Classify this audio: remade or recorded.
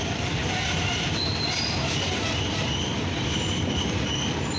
recorded